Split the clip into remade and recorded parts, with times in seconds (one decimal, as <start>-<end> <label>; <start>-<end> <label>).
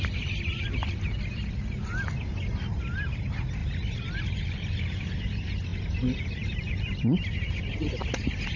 0.0-8.6 recorded